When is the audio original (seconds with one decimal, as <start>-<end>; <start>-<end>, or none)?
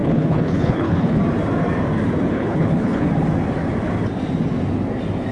1.2-2.3; 3.1-5.3